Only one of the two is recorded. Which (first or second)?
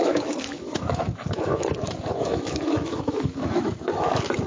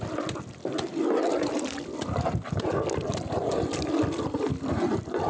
second